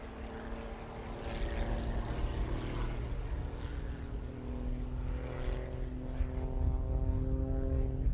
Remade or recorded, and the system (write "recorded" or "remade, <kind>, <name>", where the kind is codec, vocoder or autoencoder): recorded